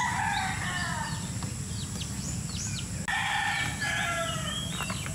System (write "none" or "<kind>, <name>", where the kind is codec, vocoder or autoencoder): none